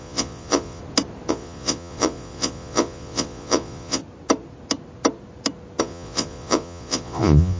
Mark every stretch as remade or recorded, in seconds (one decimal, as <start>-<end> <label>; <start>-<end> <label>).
0.0-0.8 remade; 0.8-1.3 recorded; 1.3-4.0 remade; 4.0-5.8 recorded; 5.8-7.6 remade